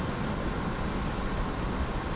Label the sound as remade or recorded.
recorded